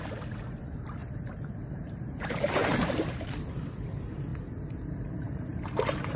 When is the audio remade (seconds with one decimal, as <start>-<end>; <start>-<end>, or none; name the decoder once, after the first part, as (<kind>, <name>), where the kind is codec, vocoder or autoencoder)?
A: 0.0-4.3 (vocoder, BigVGAN v2); 4.9-6.2